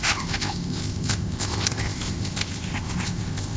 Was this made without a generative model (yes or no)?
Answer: no